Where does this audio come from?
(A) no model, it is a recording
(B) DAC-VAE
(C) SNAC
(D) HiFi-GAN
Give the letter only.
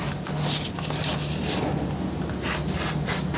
A